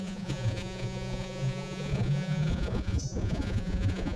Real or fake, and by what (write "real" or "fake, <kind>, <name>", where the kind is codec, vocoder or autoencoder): fake, vocoder, Vocos